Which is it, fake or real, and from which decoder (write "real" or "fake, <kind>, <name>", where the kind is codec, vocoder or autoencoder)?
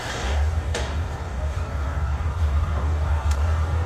fake, codec, DAC